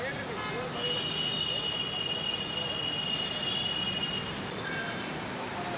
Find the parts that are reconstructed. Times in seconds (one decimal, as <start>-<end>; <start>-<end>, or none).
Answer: none